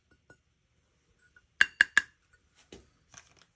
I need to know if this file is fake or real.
real